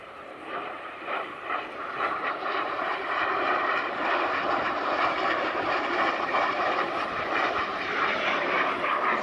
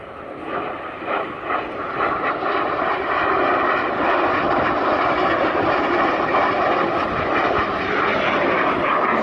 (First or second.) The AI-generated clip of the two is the first